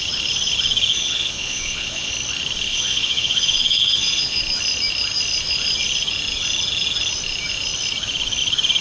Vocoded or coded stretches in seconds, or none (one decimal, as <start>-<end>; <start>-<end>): 0.9-2.1; 2.7-4.4

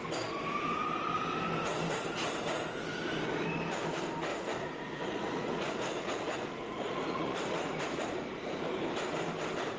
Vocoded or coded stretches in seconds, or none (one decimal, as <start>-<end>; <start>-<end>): 4.3-8.6

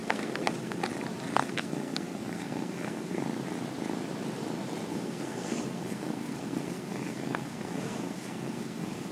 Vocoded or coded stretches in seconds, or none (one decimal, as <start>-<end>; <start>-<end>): 0.0-0.8; 1.4-3.2; 4.9-9.1

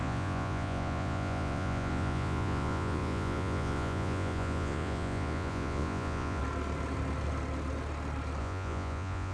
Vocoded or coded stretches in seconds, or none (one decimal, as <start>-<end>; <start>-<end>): 0.0-6.4; 8.4-9.3